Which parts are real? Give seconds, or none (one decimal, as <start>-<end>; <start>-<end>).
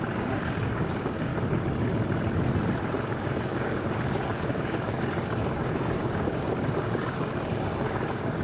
1.3-3.1